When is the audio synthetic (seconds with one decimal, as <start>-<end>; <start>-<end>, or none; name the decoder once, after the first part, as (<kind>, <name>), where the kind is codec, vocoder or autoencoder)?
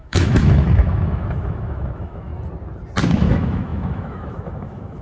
0.0-2.3 (autoencoder, DAC-VAE); 3.1-5.0